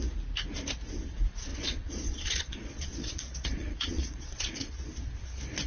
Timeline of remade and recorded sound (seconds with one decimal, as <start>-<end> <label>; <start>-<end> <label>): 0.0-1.5 recorded; 1.5-4.9 remade; 4.9-5.7 recorded